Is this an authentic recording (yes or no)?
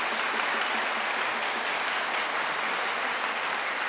yes